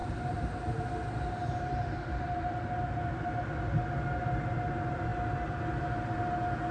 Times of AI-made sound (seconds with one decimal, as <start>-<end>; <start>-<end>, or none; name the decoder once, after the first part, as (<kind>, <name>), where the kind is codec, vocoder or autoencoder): none